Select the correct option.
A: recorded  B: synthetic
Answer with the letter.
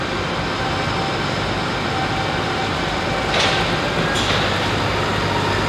A